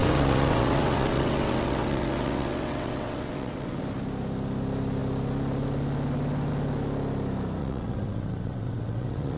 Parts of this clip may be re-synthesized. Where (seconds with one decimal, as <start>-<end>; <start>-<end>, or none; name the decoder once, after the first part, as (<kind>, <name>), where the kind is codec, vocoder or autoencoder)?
0.0-3.8 (vocoder, WaveNeXt); 7.6-9.4